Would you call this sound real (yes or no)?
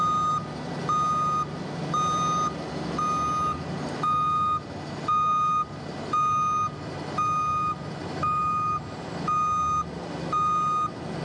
yes